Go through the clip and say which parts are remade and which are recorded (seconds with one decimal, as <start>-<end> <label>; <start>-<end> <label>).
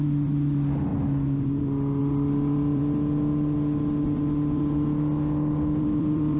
0.0-0.9 remade; 0.9-2.0 recorded; 2.0-2.8 remade; 2.8-5.8 recorded; 5.8-6.4 remade